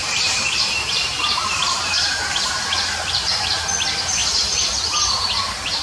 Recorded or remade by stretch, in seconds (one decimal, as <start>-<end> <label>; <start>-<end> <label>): 0.0-3.5 remade; 3.5-5.8 recorded